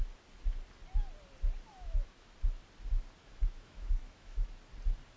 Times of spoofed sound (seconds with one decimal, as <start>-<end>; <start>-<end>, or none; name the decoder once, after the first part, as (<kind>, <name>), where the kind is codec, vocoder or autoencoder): 1.7-2.3 (autoencoder, DAC-VAE); 3.2-4.5